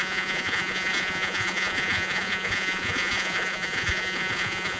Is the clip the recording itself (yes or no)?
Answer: no